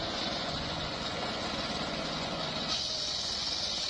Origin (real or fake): fake